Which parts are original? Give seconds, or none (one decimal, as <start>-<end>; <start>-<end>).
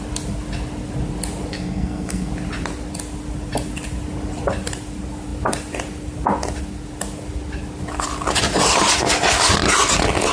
0.0-1.5; 2.3-10.3